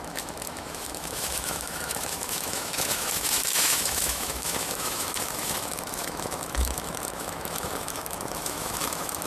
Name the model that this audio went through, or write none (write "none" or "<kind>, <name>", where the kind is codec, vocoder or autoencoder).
autoencoder, DAC-VAE